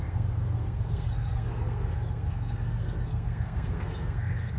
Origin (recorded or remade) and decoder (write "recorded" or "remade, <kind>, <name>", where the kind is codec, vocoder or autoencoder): remade, codec, SNAC